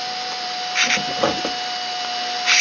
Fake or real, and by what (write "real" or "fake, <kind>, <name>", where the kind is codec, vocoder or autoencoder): real